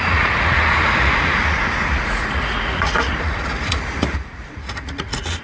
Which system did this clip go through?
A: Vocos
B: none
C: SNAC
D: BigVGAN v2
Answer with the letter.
A